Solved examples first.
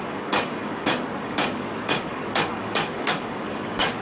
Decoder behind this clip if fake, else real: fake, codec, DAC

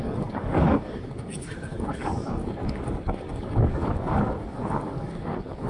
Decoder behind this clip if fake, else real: fake, codec, DAC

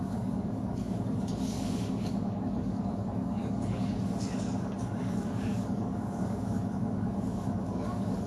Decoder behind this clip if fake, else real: fake, codec, DAC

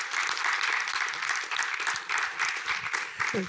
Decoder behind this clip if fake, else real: real